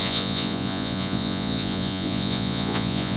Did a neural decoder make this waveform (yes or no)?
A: yes